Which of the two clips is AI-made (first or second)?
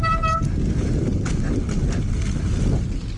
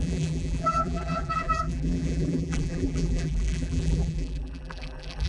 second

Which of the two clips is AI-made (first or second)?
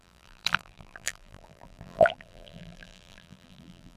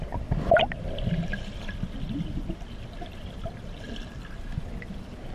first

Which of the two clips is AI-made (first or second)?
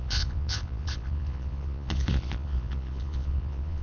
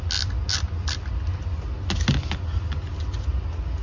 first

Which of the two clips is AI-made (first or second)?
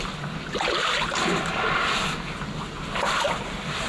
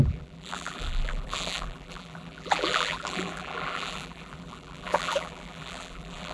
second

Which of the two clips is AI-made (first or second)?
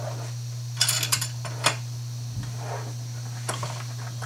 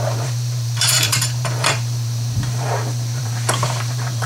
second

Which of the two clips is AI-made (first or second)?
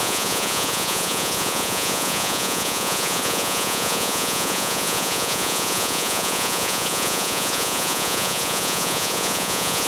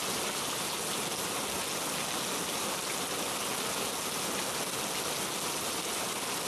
first